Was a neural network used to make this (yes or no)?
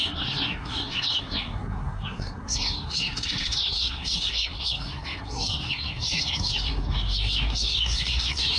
yes